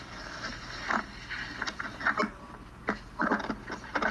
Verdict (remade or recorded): recorded